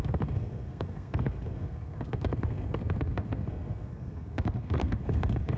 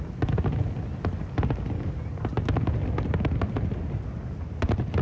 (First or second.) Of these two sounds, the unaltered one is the second